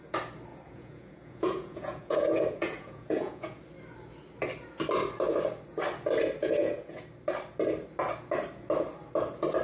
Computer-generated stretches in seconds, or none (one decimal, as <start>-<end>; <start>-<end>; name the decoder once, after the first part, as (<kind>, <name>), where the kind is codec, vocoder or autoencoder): 0.5-3.6 (vocoder, Vocos); 6.4-7.0